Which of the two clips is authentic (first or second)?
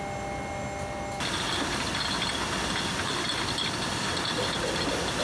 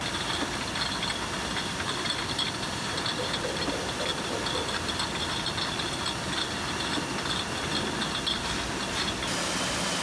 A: first